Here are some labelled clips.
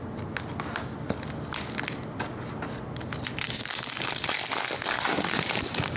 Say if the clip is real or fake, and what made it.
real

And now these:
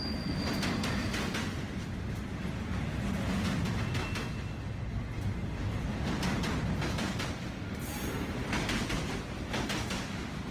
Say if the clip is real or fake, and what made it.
real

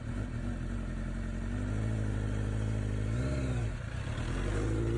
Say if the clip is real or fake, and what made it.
real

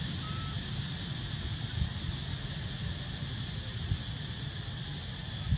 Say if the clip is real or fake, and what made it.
real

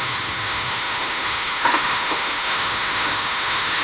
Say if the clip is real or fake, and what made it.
fake, autoencoder, DAC-VAE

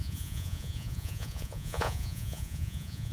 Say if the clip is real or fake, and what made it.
fake, vocoder, Vocos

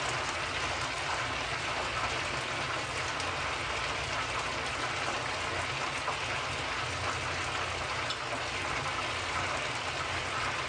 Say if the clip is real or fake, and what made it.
real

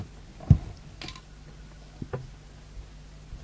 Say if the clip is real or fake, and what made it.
real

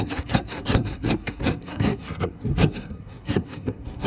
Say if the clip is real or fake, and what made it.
fake, codec, SNAC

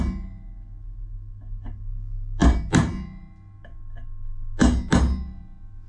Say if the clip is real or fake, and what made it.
real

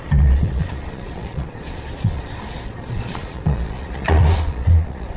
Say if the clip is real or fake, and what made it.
fake, vocoder, Vocos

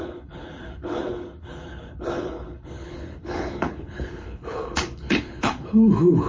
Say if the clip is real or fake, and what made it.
fake, codec, HILCodec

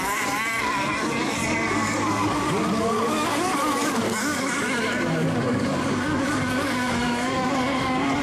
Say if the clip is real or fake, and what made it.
fake, codec, DAC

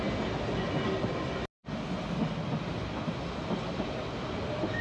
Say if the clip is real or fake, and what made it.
real